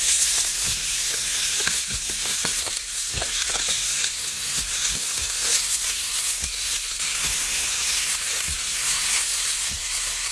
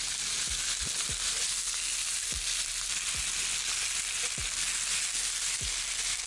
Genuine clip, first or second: second